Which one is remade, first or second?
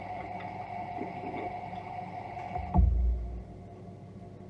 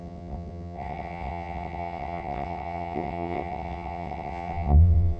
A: second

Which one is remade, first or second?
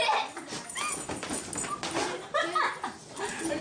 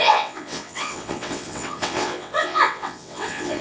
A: second